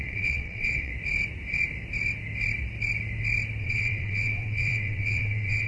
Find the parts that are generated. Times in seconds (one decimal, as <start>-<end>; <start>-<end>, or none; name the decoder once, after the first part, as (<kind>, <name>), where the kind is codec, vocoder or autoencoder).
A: 0.0-0.9 (vocoder, WaveNeXt); 3.6-5.7

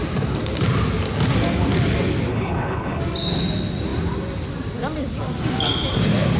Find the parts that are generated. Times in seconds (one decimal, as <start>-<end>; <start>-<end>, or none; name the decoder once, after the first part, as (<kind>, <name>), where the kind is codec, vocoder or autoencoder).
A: 2.3-3.0 (codec, HILCodec)

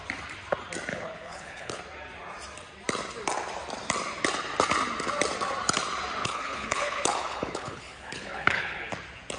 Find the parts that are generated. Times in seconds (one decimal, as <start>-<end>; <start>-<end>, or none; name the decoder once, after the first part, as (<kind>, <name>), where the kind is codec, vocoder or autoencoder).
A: 0.9-1.8 (codec, HILCodec); 6.2-8.9

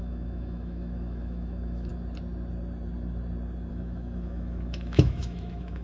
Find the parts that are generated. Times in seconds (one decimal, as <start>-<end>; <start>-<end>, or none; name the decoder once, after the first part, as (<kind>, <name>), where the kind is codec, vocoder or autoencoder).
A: 0.0-1.9 (autoencoder, DAC-VAE); 3.7-5.8

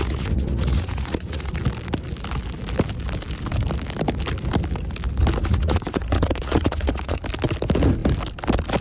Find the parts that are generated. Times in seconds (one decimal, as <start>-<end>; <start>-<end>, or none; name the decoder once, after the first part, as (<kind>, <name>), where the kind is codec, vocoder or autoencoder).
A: 0.0-1.5 (vocoder, Vocos); 5.4-7.2

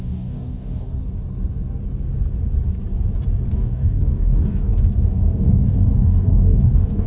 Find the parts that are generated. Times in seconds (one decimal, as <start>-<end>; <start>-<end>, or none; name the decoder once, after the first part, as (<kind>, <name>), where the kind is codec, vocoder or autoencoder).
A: 0.0-1.0 (codec, DAC); 3.5-7.1